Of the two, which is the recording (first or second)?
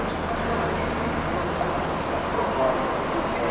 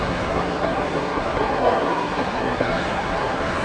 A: first